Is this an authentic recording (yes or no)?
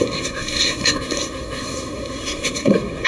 no